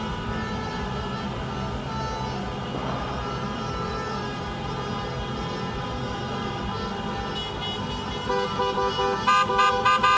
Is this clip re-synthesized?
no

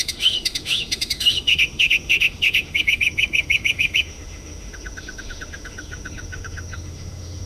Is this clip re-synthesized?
yes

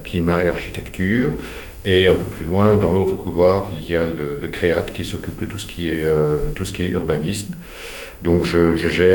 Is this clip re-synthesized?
yes